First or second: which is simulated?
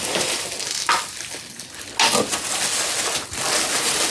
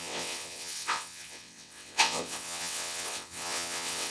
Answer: second